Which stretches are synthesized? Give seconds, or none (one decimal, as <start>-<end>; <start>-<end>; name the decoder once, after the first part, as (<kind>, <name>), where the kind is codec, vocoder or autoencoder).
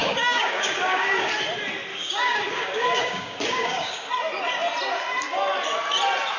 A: 0.0-1.3 (codec, DAC); 1.9-4.1